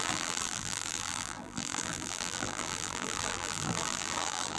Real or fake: fake